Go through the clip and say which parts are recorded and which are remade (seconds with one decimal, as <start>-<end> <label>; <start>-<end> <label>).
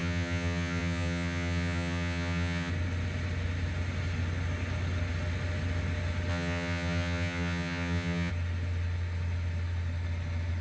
0.0-2.7 remade; 2.7-6.3 recorded; 6.3-8.3 remade; 8.3-10.6 recorded